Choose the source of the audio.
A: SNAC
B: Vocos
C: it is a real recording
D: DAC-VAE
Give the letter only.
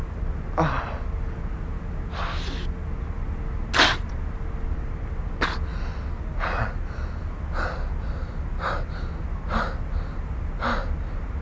C